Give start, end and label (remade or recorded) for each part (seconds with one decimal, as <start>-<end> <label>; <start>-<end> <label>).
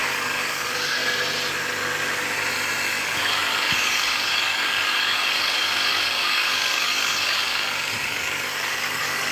0.0-1.0 remade; 1.0-3.0 recorded; 3.0-9.3 remade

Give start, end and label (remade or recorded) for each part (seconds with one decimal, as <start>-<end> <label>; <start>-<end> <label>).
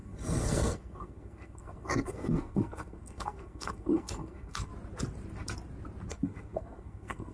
0.0-4.7 remade; 4.7-6.1 recorded; 6.1-7.3 remade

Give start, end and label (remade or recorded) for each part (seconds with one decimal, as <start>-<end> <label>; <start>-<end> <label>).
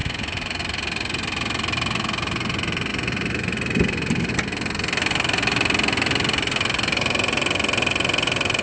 0.0-0.6 remade; 0.6-2.9 recorded; 2.9-4.3 remade; 4.3-8.6 recorded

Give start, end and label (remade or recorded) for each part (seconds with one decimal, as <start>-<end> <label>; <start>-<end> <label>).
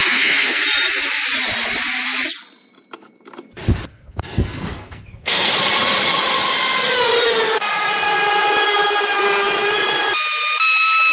0.0-0.6 remade; 0.6-3.9 recorded; 3.9-5.5 remade; 5.5-11.1 recorded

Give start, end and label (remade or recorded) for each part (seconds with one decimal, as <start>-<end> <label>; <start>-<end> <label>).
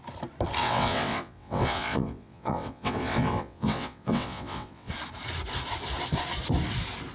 0.0-0.6 recorded; 0.6-4.9 remade; 4.9-7.1 recorded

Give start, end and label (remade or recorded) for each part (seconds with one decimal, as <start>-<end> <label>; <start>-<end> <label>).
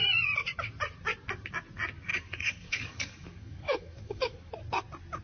0.0-2.1 recorded; 2.1-4.5 remade; 4.5-5.2 recorded